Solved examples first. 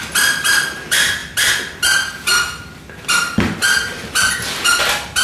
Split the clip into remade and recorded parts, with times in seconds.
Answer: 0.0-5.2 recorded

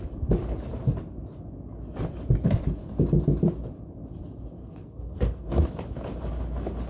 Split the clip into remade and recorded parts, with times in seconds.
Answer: 0.0-4.6 recorded; 4.6-5.5 remade; 5.5-6.9 recorded

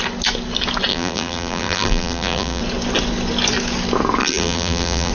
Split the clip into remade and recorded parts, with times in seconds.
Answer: 0.0-0.9 recorded; 0.9-2.6 remade; 2.6-4.2 recorded; 4.2-5.1 remade